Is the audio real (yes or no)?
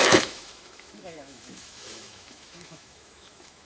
no